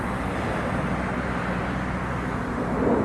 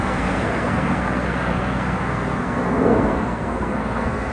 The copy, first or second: second